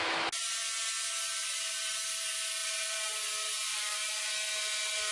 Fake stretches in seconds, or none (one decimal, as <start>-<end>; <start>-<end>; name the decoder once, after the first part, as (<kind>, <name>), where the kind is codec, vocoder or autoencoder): 2.6-3.1 (vocoder, BigVGAN v2); 3.7-4.3